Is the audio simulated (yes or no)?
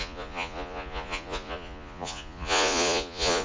yes